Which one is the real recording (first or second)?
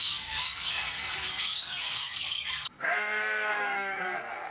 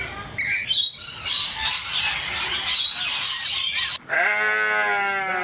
second